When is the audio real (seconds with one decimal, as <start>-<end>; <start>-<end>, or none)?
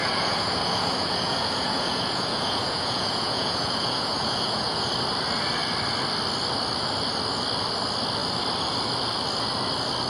4.9-10.1